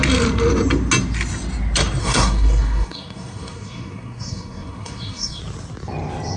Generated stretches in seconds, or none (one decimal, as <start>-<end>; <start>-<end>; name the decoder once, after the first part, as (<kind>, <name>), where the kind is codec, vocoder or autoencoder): 2.0-5.4 (codec, SNAC)